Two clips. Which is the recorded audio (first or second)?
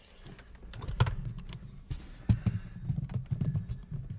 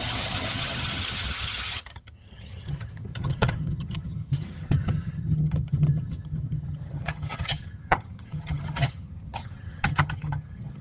first